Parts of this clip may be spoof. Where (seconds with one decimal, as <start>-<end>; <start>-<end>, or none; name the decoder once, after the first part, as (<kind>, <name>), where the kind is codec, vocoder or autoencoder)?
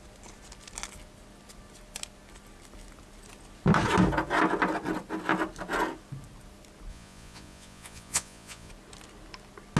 6.9-8.7 (vocoder, Vocos)